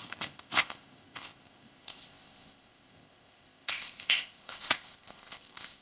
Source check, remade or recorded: remade